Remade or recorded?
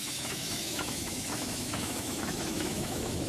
remade